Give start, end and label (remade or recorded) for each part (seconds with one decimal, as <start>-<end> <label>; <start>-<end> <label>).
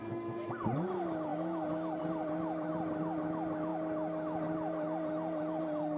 0.0-6.0 recorded